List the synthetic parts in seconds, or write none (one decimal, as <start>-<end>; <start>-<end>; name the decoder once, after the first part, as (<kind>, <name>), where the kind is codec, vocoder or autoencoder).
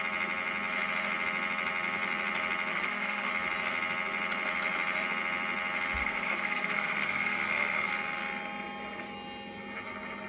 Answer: 2.7-3.3 (codec, SNAC); 6.0-7.9